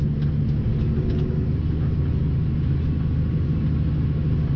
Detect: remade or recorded recorded